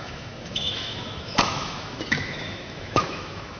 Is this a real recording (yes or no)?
no